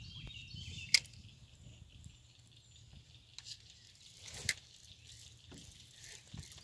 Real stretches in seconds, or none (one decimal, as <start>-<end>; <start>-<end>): 0.0-6.6